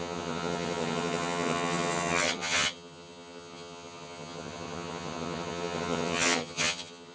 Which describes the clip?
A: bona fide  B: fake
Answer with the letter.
B